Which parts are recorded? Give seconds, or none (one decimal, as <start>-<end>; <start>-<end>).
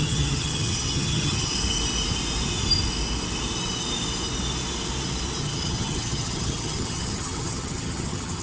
1.5-5.4